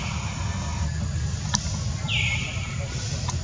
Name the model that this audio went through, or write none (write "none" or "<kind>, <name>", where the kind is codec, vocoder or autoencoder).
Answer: none